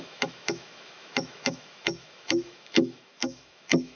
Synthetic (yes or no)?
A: yes